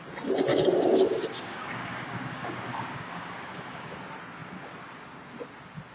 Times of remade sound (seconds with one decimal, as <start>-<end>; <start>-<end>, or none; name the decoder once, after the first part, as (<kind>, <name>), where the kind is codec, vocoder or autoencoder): 0.5-4.0 (codec, DAC)